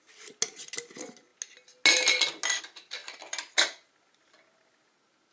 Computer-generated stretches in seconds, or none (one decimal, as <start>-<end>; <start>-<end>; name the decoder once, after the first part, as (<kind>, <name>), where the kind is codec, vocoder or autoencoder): none